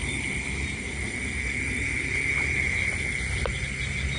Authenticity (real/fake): real